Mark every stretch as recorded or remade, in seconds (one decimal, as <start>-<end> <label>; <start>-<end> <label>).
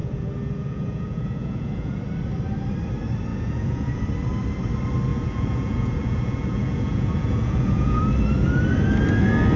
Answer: 0.0-2.0 remade; 2.0-3.3 recorded; 3.3-4.0 remade; 4.0-5.1 recorded; 5.1-8.0 remade; 8.0-9.6 recorded